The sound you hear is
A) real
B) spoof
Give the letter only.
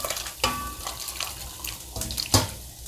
A